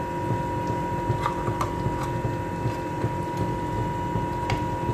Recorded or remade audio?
recorded